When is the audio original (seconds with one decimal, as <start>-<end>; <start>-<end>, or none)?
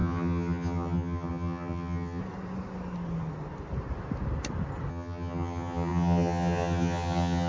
2.2-4.9